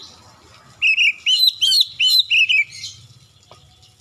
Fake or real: real